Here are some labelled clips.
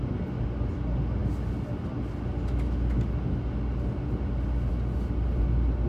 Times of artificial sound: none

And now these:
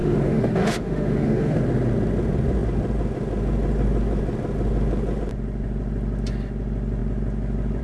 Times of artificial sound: 0.0-1.6 (autoencoder, DAC-VAE)